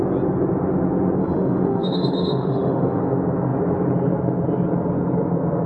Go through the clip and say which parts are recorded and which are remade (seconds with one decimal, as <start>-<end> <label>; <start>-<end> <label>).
0.0-1.2 recorded; 1.2-3.0 remade; 3.0-5.7 recorded

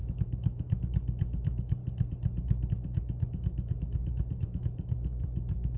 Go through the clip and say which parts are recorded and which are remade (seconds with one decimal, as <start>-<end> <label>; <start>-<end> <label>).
0.0-1.8 remade; 1.8-2.7 recorded; 2.7-5.8 remade

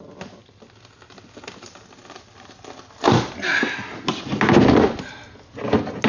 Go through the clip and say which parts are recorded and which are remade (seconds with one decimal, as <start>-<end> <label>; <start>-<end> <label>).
0.0-6.1 recorded

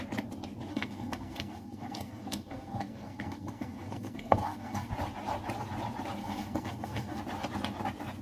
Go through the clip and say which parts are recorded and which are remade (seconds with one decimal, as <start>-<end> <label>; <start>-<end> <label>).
0.0-0.7 recorded; 0.7-4.9 remade; 4.9-6.2 recorded; 6.2-7.2 remade; 7.2-8.2 recorded

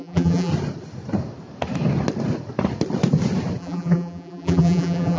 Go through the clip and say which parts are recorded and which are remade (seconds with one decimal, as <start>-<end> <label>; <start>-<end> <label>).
0.0-0.5 remade; 0.5-3.6 recorded; 3.6-5.2 remade

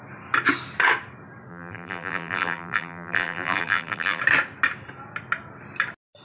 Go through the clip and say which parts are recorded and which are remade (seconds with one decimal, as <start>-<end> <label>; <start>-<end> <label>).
0.0-1.5 recorded; 1.5-4.2 remade; 4.2-6.2 recorded

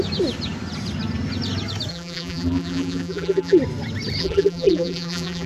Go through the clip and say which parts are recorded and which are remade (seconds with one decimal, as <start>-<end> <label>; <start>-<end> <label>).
0.0-1.9 recorded; 1.9-3.6 remade; 3.6-4.2 recorded; 4.2-5.5 remade